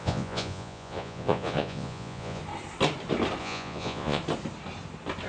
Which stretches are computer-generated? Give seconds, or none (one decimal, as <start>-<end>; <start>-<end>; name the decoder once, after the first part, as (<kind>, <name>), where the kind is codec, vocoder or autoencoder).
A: 0.0-2.4 (vocoder, Vocos); 3.4-4.2